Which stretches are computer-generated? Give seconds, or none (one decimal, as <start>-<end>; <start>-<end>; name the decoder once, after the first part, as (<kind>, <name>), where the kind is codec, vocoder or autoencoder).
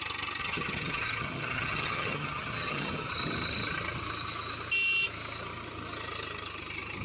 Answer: 0.4-3.1 (vocoder, HiFi-GAN)